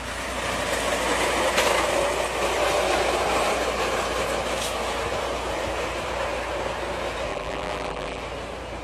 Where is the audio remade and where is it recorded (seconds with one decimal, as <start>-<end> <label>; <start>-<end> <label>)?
0.0-7.3 recorded; 7.3-8.2 remade; 8.2-8.8 recorded